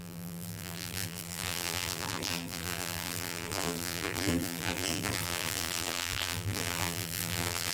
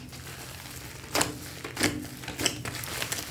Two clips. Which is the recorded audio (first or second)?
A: second